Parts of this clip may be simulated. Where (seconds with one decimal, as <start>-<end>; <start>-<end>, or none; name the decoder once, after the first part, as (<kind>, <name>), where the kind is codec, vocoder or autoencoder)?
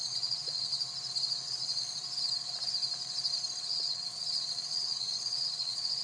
0.0-0.7 (vocoder, WaveNeXt); 1.5-2.0; 3.6-6.0